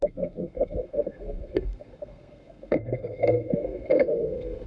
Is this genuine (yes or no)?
no